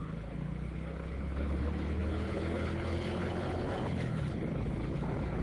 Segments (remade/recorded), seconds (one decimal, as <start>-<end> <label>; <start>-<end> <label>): 0.0-5.4 remade